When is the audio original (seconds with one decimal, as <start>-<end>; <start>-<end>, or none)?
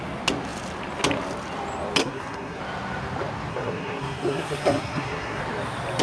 0.0-2.0; 2.6-3.5; 5.4-6.0